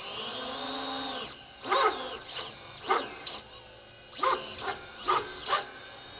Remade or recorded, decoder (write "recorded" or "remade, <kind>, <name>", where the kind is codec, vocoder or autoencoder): recorded